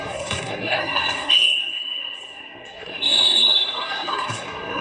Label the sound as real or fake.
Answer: fake